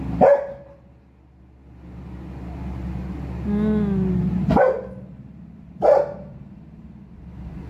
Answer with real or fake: real